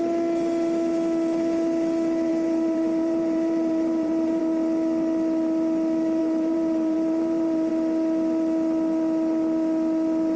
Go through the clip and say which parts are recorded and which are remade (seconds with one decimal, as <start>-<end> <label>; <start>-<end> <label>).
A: 0.0-2.3 recorded; 2.3-4.4 remade; 4.4-6.2 recorded; 6.2-7.7 remade; 7.7-10.4 recorded

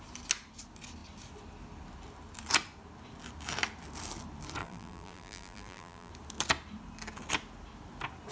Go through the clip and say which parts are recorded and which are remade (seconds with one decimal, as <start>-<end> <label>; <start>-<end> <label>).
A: 0.0-4.6 recorded; 4.6-6.1 remade; 6.1-8.3 recorded

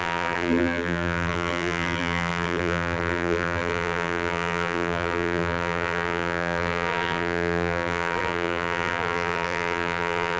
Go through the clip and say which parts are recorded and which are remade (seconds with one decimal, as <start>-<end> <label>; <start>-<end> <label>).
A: 0.0-10.4 remade

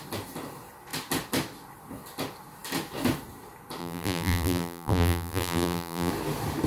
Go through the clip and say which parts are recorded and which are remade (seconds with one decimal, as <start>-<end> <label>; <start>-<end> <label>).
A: 0.0-3.8 recorded; 3.8-6.1 remade; 6.1-6.7 recorded

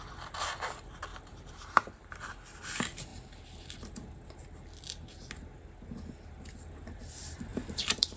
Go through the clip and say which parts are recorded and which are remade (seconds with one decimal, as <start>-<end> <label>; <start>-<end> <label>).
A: 0.0-1.1 recorded; 1.1-2.1 remade; 2.1-7.5 recorded; 7.5-8.2 remade

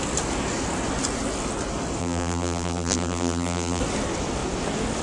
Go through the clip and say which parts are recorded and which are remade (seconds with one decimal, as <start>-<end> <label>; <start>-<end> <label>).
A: 0.0-2.0 recorded; 2.0-3.8 remade; 3.8-5.0 recorded

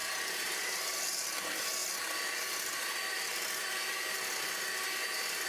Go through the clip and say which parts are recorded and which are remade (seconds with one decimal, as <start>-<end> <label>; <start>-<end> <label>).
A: 0.0-1.0 remade; 1.0-5.5 recorded

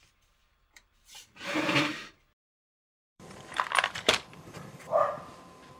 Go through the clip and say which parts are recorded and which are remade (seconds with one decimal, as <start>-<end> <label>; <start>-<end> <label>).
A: 0.0-1.9 remade; 1.9-2.9 recorded; 2.9-5.8 remade